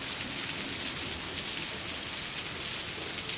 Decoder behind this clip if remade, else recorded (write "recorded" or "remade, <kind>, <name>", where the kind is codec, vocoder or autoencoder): recorded